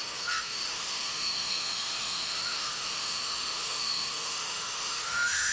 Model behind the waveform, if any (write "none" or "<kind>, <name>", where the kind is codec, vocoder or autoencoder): autoencoder, DAC-VAE